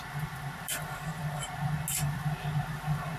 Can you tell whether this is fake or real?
real